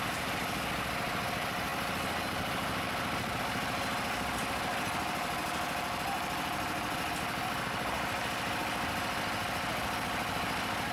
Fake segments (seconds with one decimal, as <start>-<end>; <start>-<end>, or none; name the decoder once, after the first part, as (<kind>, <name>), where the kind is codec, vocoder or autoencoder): none